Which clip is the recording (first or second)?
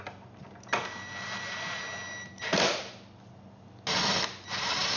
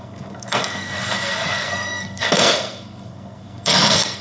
first